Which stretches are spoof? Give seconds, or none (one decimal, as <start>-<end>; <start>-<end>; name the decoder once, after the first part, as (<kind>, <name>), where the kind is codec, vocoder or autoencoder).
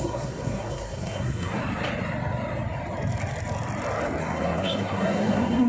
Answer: 0.0-1.6 (codec, SNAC); 4.2-5.7